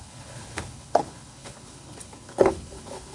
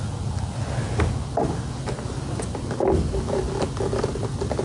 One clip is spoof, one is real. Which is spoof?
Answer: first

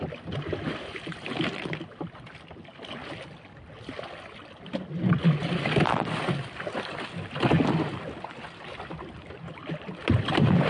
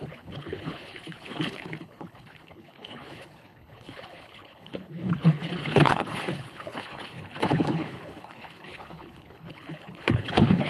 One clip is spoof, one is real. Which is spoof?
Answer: second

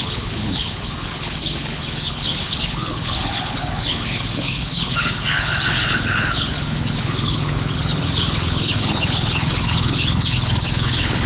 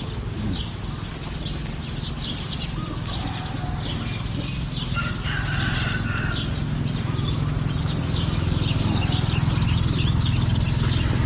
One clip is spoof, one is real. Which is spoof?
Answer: first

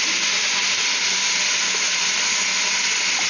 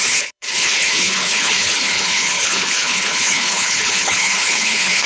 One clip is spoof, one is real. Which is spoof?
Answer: second